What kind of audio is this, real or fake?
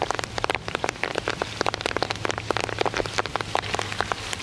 real